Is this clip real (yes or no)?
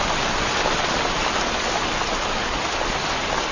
yes